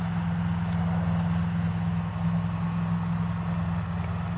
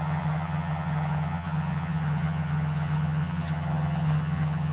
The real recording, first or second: first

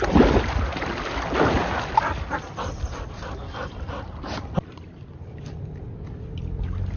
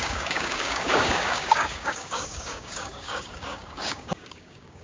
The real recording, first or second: first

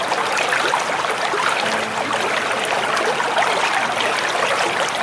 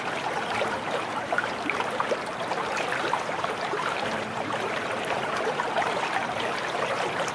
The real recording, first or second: first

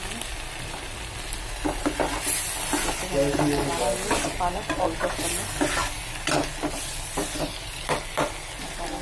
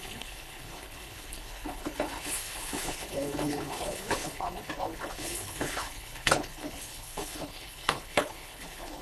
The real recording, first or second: first